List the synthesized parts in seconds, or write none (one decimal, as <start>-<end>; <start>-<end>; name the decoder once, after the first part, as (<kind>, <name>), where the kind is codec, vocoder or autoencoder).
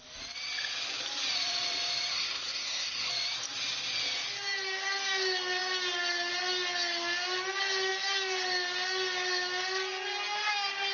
2.1-3.1 (codec, SNAC)